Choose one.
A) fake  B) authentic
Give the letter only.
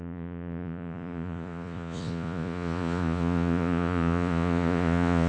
A